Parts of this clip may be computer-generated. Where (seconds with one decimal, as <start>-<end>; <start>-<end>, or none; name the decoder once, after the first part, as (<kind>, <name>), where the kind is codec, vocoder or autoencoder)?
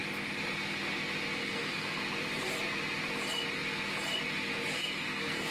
1.4-2.0 (codec, SNAC); 4.7-5.5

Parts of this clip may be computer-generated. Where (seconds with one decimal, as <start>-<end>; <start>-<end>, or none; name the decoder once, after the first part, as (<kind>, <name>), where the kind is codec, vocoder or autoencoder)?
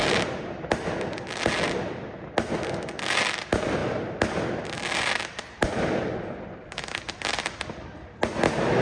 none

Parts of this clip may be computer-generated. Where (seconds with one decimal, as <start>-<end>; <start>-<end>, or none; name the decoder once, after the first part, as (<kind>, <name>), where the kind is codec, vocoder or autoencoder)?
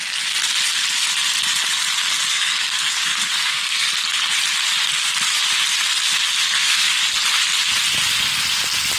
2.3-3.9 (codec, SNAC); 6.4-6.9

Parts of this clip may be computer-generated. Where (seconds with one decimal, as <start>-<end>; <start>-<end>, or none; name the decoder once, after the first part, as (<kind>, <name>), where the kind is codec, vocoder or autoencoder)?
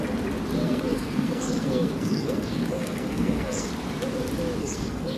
0.6-3.7 (codec, SNAC); 4.6-5.2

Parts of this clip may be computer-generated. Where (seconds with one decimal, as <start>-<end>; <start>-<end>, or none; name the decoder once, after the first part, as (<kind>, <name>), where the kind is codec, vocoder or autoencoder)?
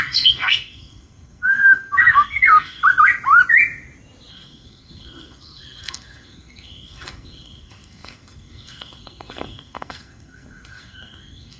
0.0-2.8 (codec, SNAC); 4.3-11.6